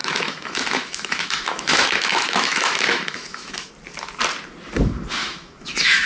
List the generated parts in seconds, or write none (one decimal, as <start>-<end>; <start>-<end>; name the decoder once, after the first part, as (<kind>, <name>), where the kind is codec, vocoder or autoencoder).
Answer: 0.0-3.7 (autoencoder, DAC-VAE); 5.2-6.1